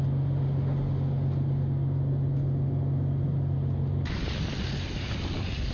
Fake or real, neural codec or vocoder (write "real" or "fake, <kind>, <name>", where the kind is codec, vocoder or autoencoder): real